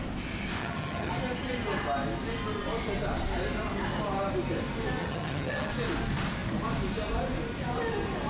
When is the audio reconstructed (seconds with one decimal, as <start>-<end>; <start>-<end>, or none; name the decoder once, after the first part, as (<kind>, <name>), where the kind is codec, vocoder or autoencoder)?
0.6-1.1 (vocoder, HiFi-GAN); 5.0-5.7

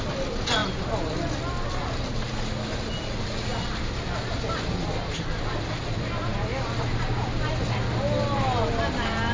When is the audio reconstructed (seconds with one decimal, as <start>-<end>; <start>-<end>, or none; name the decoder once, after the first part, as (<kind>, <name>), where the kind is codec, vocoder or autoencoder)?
none

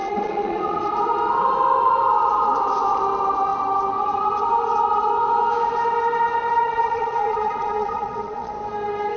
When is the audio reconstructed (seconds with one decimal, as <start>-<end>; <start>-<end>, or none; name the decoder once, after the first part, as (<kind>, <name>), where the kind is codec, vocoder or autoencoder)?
0.0-0.8 (vocoder, Vocos); 6.6-8.5

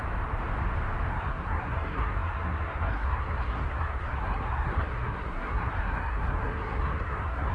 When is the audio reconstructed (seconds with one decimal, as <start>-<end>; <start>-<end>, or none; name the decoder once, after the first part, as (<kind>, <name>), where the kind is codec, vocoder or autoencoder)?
1.1-7.5 (codec, SNAC)

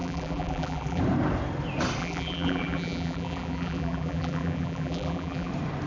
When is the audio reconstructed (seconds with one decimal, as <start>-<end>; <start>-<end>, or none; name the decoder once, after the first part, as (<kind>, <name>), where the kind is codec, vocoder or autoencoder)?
0.0-1.0 (vocoder, BigVGAN v2); 2.0-5.5

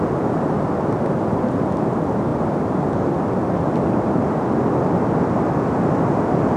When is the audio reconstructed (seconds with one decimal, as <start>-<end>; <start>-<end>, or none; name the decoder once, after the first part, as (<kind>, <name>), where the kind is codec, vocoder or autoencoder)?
none

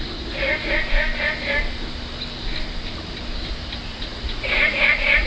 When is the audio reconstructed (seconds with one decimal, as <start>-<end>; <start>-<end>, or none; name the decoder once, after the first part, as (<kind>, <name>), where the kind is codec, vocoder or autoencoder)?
3.9-5.3 (vocoder, Vocos)

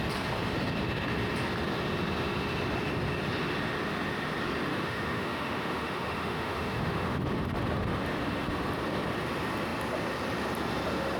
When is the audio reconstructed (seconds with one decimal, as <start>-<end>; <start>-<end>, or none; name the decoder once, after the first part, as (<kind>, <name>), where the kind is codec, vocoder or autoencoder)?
4.7-7.2 (autoencoder, DAC-VAE)